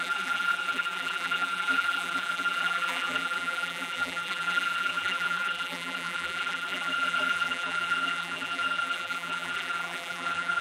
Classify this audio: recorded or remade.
remade